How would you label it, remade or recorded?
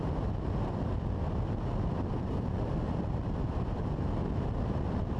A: remade